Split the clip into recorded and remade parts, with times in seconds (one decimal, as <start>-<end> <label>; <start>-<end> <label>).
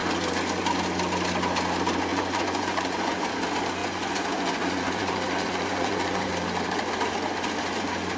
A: 0.0-2.1 recorded; 2.1-3.3 remade; 3.3-3.8 recorded; 3.8-6.3 remade; 6.3-8.2 recorded